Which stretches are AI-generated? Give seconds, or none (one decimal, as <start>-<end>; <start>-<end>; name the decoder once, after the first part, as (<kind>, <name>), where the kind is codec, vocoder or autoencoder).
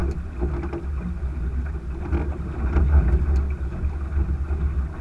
none